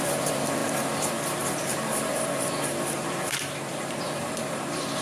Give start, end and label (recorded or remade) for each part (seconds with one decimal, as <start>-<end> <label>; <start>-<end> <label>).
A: 0.0-5.0 remade